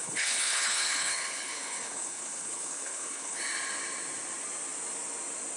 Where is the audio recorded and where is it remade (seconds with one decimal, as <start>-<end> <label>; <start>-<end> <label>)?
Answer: 0.0-3.4 remade; 3.4-5.6 recorded